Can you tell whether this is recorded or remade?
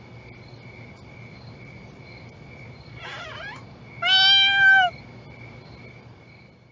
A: recorded